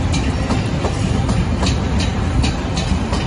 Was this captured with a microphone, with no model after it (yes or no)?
yes